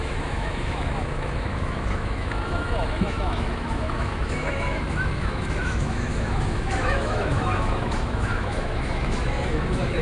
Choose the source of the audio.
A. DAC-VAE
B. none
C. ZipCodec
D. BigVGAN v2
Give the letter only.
A